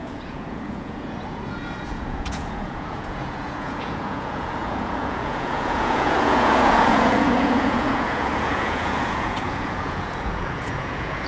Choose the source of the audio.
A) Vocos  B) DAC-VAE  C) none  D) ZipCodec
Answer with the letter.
A